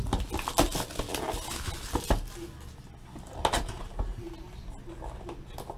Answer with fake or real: real